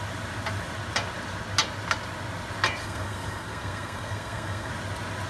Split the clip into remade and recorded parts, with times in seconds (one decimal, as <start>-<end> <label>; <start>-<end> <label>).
0.0-2.8 recorded; 2.8-4.7 remade; 4.7-5.3 recorded